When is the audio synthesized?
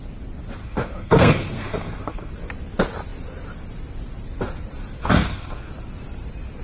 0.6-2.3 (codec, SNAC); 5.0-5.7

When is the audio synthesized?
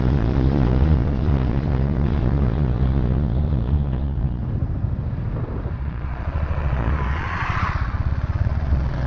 0.0-4.4 (vocoder, Vocos); 5.8-9.1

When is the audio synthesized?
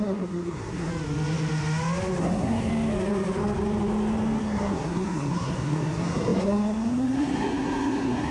0.0-0.9 (codec, SNAC); 2.2-2.7; 4.4-8.3